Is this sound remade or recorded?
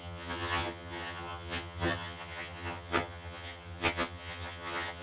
remade